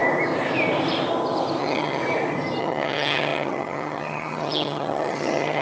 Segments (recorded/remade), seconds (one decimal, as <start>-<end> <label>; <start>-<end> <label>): 0.0-1.6 recorded; 1.6-2.0 remade; 2.0-2.6 recorded; 2.6-5.6 remade